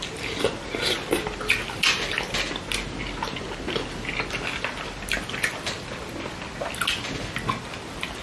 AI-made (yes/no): no